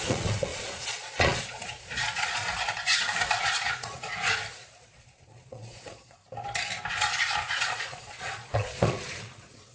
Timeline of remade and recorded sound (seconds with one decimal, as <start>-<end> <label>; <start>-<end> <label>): 0.0-2.4 remade; 2.4-3.4 recorded; 3.4-4.1 remade; 4.1-4.6 recorded; 4.6-6.2 remade; 6.2-7.0 recorded; 7.0-9.7 remade